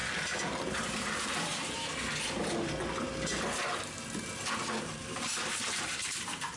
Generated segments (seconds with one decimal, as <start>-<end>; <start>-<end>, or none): 0.7-1.5; 4.8-6.6